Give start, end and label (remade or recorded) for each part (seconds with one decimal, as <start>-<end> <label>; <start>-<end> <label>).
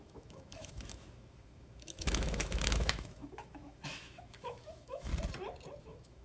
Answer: 0.0-5.1 remade; 5.1-5.8 recorded; 5.8-6.2 remade